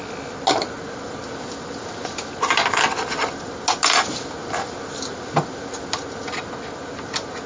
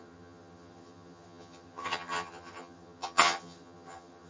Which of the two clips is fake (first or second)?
second